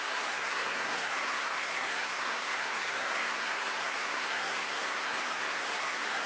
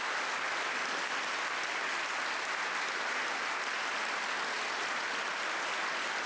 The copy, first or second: first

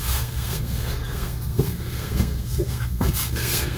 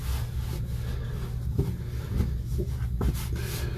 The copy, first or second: first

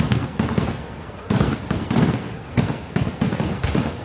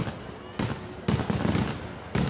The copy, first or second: first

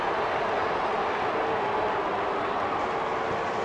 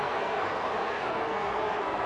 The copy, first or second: second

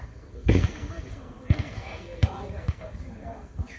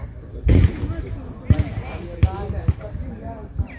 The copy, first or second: first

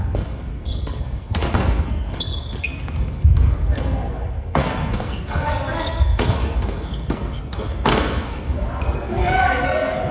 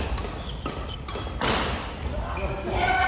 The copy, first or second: first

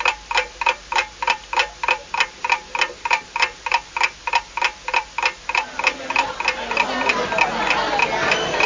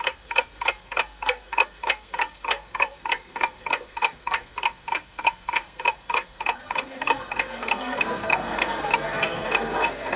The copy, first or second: second